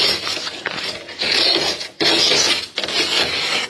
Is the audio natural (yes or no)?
yes